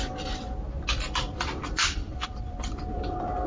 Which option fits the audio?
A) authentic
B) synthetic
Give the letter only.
B